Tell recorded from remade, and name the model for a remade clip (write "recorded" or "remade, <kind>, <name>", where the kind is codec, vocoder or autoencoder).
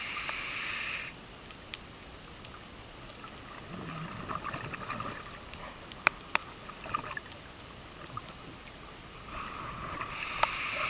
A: recorded